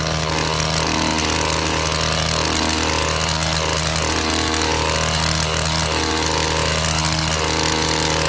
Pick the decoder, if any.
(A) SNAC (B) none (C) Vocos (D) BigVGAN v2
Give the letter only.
B